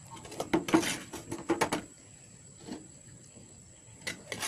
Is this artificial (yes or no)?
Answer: no